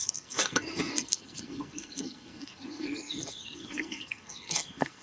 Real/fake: fake